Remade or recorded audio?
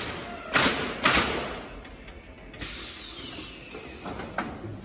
recorded